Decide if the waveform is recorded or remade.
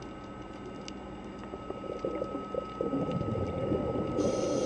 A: recorded